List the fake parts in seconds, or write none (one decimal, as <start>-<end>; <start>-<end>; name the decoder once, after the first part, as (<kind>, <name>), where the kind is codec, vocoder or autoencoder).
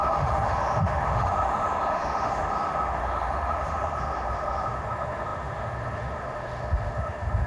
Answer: 0.0-7.5 (autoencoder, DAC-VAE)